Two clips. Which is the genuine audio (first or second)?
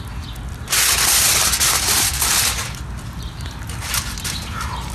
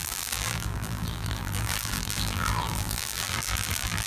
first